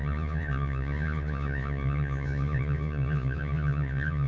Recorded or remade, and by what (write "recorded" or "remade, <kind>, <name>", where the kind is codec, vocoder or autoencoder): remade, vocoder, Vocos